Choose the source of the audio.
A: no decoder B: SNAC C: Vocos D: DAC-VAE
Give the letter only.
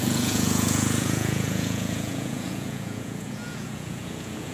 C